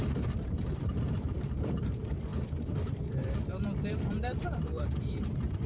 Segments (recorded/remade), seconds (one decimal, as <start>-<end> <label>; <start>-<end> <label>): 0.0-5.7 remade